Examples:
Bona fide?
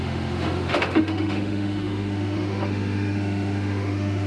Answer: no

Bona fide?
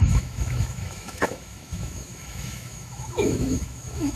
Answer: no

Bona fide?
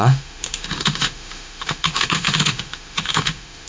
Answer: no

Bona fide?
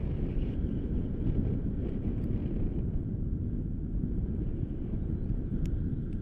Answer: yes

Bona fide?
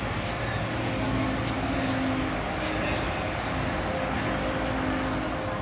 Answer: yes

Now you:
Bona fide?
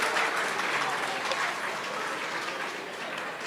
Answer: yes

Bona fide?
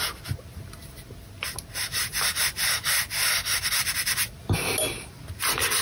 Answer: yes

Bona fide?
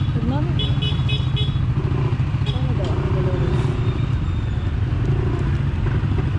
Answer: yes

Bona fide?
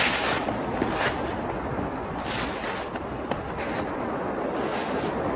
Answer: yes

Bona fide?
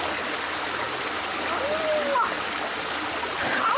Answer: yes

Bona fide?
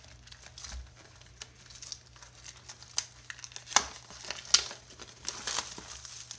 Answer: yes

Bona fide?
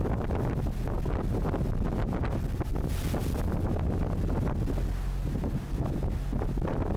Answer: yes